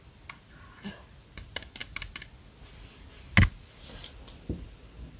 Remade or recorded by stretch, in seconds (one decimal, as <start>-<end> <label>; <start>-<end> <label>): 0.0-5.2 recorded